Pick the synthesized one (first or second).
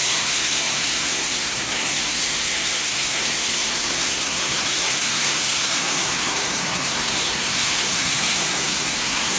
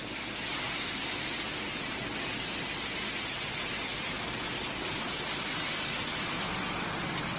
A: first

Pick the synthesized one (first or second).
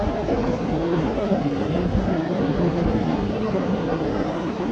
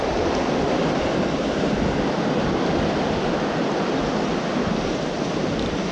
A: first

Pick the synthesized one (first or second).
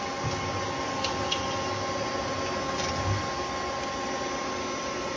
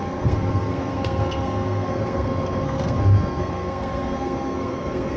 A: second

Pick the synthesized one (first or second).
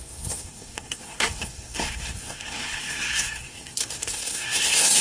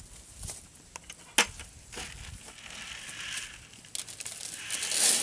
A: first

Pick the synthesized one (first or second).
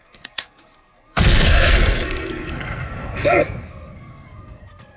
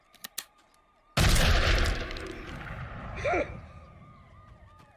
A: first